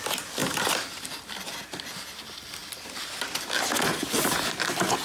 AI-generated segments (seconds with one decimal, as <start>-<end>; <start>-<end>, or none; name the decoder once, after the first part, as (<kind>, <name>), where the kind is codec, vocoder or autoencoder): 0.0-0.4 (vocoder, BigVGAN v2); 0.9-2.6